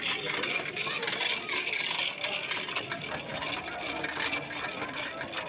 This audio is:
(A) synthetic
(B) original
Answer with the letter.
B